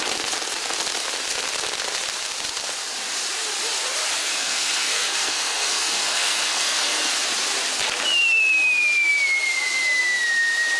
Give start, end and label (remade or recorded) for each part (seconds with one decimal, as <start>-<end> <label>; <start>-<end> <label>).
0.0-4.2 recorded; 4.2-7.1 remade; 7.1-10.8 recorded